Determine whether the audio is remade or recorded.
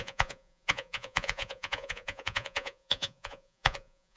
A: remade